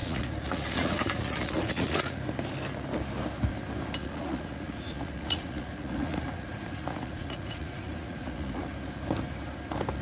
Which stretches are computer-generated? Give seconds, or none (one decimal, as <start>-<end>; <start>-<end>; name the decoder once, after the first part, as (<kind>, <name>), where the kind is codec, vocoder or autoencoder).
0.0-2.2 (vocoder, Vocos); 4.0-8.6